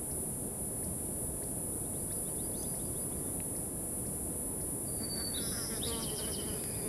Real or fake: real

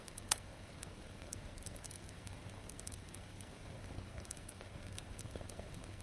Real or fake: fake